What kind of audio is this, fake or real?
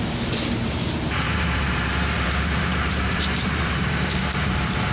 fake